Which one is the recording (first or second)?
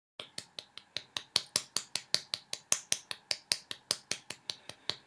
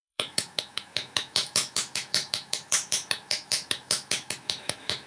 first